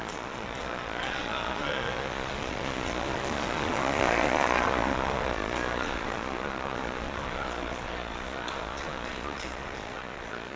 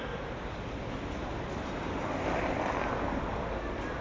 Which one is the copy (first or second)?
first